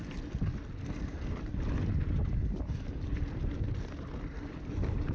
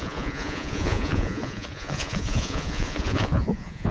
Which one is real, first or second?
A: first